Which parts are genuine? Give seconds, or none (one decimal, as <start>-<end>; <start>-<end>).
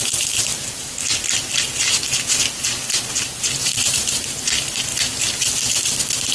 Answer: 0.5-1.2